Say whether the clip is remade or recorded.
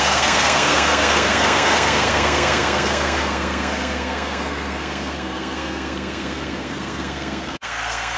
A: remade